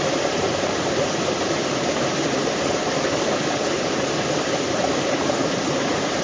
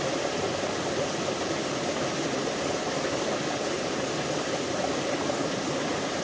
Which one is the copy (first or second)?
first